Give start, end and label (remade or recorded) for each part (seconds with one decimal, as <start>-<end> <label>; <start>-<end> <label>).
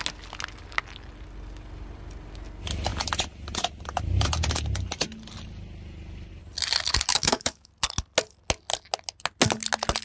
0.0-7.1 recorded; 7.1-7.7 remade; 7.7-10.0 recorded